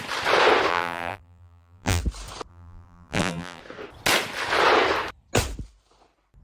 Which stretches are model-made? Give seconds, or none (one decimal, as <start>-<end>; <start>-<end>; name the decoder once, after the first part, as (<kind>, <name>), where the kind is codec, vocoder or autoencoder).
0.7-2.0 (vocoder, BigVGAN v2); 2.5-3.6